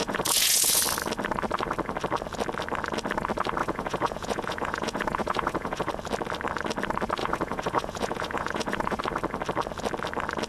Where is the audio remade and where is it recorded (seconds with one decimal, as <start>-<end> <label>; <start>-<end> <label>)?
0.0-0.8 remade; 0.8-3.6 recorded; 3.6-5.9 remade; 5.9-7.2 recorded; 7.2-9.0 remade; 9.0-10.5 recorded